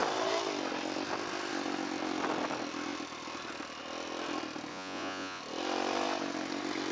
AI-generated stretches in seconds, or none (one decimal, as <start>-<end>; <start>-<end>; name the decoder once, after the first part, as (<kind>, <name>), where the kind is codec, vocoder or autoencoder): 4.7-5.4 (vocoder, Vocos)